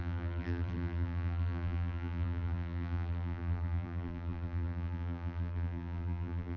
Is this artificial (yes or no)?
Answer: yes